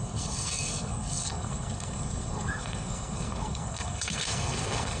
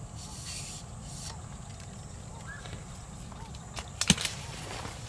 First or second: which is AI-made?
first